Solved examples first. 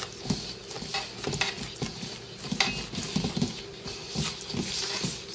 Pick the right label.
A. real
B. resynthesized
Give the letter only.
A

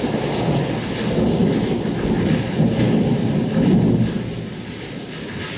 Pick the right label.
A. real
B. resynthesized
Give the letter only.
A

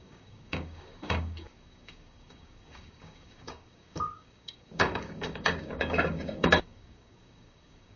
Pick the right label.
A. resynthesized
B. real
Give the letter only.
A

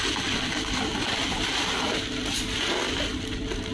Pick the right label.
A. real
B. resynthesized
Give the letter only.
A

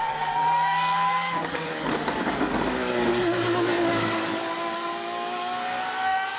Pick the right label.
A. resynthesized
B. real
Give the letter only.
A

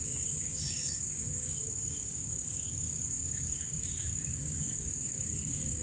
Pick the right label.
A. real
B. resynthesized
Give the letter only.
B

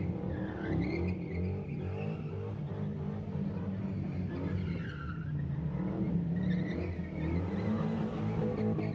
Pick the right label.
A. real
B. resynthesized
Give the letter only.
A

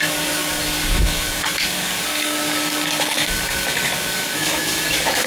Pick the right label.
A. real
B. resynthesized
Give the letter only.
B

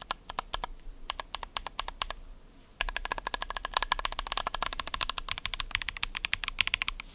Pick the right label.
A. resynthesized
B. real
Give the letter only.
B